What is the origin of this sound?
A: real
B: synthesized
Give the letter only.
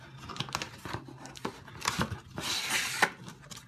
A